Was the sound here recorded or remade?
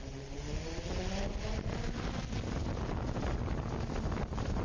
recorded